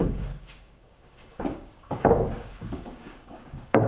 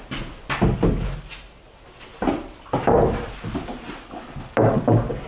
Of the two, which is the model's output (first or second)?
first